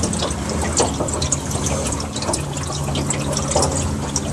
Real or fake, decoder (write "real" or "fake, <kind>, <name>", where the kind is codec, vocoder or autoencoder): real